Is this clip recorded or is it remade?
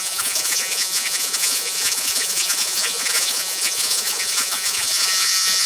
remade